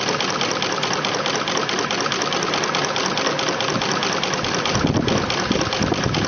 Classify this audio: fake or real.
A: real